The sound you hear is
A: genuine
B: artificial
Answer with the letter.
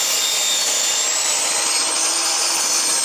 A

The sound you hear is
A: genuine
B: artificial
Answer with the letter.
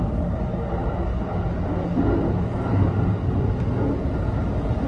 A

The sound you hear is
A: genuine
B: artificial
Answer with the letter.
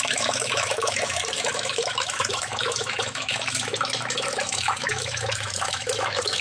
B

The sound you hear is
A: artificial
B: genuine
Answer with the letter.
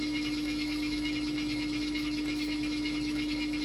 A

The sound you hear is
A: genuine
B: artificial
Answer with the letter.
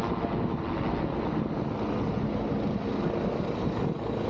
A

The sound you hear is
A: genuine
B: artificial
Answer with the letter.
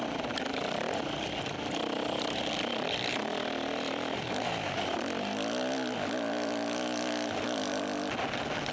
A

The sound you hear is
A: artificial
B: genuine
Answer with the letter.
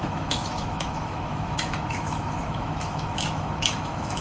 A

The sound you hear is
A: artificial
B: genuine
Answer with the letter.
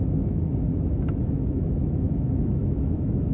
A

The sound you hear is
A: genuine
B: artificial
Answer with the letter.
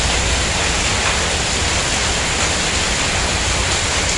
A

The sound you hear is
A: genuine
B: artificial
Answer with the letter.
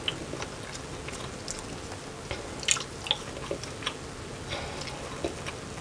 A